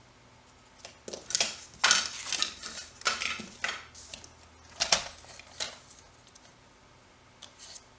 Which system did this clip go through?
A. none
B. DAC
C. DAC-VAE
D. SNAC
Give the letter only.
A